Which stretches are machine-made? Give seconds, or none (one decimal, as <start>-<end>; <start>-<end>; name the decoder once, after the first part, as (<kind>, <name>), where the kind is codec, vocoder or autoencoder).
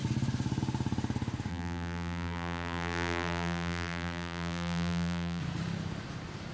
1.5-5.4 (vocoder, BigVGAN v2)